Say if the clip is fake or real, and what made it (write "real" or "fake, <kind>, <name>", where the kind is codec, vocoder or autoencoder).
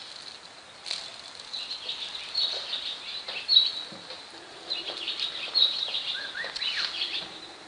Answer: real